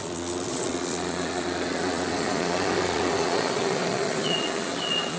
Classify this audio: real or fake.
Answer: fake